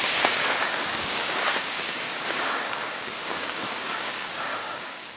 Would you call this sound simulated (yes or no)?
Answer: yes